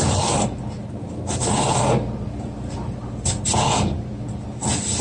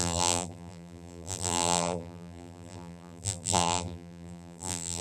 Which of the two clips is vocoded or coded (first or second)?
second